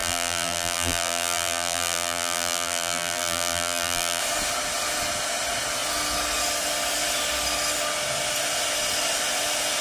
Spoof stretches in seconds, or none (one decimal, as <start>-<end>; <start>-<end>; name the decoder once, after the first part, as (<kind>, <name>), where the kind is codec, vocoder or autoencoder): 0.0-4.2 (vocoder, BigVGAN v2)